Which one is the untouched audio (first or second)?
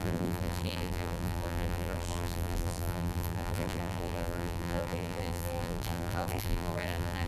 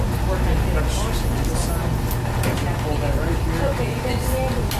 second